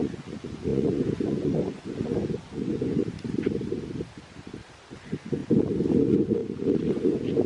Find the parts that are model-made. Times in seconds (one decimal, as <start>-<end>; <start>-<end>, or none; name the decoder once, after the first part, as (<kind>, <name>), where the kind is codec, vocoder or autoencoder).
0.0-3.0 (vocoder, Vocos); 4.9-5.4; 6.0-7.5